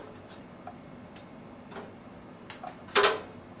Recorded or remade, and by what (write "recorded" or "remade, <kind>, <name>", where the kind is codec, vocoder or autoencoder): recorded